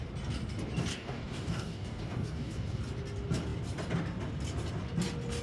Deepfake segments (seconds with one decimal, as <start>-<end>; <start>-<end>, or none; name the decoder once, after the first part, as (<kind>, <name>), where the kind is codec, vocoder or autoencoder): 0.9-2.8 (codec, DAC)